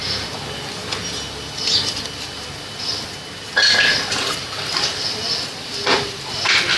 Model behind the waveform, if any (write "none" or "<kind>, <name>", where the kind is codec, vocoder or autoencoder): none